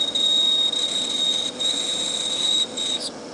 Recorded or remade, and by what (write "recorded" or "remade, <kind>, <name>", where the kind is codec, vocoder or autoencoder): recorded